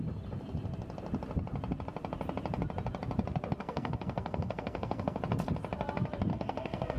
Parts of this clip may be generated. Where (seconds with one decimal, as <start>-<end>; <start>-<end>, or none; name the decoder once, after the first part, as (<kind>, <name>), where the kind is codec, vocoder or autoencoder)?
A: 3.6-5.2 (codec, SNAC); 6.3-7.0